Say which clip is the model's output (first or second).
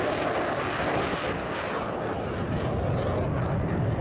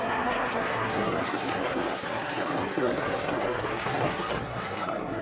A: second